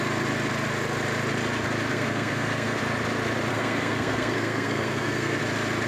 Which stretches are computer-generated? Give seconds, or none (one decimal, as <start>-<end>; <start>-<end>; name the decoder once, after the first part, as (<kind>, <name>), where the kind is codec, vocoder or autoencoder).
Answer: 1.9-2.8 (codec, SNAC); 3.5-5.4

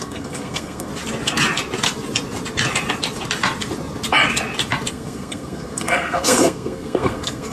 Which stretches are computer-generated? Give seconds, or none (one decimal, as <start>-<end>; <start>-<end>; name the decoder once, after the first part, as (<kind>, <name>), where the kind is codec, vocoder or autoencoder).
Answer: 0.0-0.9 (codec, SNAC); 4.9-7.5

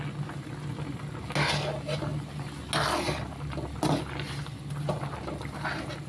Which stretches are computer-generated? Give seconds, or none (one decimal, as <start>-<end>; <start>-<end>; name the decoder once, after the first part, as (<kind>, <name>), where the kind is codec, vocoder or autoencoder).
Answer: none

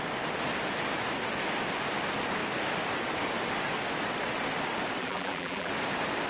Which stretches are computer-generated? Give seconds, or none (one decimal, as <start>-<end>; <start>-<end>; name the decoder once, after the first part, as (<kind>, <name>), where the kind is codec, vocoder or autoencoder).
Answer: 5.0-5.7 (vocoder, BigVGAN v2)